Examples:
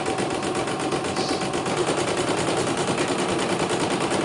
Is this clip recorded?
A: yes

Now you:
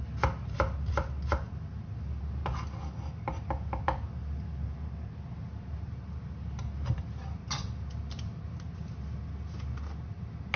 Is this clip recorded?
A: yes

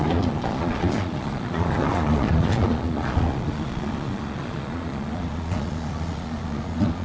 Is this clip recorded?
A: no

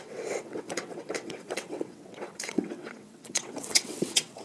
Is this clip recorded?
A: no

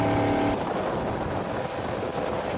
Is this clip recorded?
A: yes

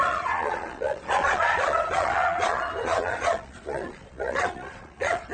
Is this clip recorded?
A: no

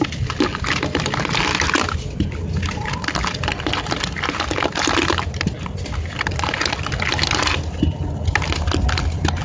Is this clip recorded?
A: yes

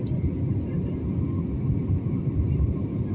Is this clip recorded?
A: yes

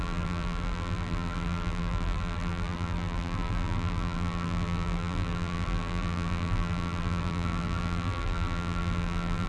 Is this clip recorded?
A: no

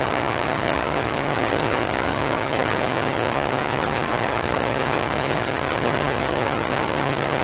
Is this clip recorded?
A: no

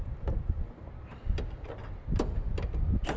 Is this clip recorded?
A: yes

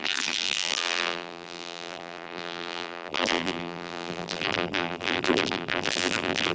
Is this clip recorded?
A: no